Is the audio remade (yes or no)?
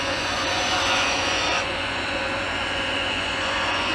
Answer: yes